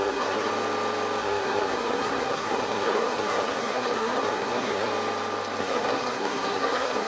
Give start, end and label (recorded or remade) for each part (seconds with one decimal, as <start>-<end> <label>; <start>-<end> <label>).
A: 0.0-0.5 remade; 0.5-1.2 recorded; 1.2-4.9 remade; 4.9-5.6 recorded; 5.6-7.1 remade